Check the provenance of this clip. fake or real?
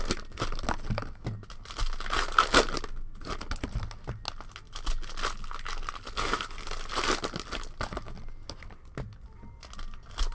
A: real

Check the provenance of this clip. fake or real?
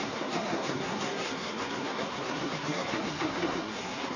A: fake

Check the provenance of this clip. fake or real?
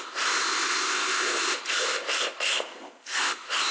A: fake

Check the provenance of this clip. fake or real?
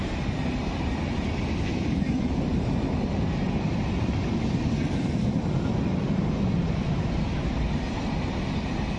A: real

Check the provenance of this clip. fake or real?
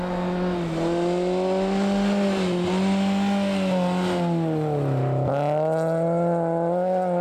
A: real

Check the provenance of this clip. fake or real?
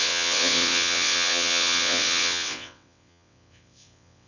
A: fake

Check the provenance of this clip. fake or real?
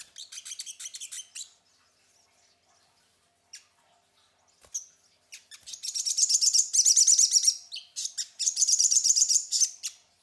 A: real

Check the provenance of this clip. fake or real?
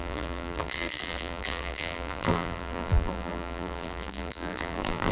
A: fake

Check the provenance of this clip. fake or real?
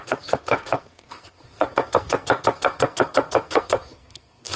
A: fake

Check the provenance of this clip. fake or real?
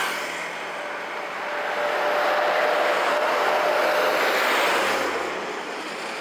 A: real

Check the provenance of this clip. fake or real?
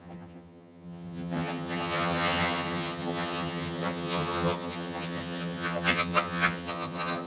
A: fake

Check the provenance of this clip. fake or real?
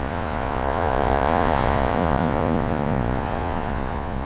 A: fake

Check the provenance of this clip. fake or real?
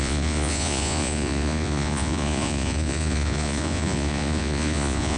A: fake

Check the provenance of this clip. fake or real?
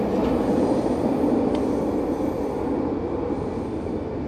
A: real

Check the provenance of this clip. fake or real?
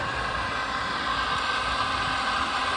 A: real